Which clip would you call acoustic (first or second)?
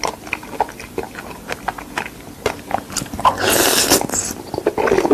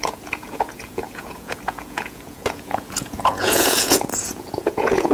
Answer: first